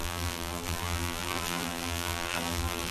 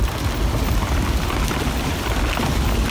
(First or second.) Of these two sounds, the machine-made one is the first